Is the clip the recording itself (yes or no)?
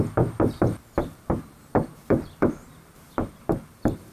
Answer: no